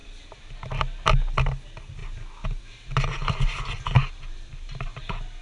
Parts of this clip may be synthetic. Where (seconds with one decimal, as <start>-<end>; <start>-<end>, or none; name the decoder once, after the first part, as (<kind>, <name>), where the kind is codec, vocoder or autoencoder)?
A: none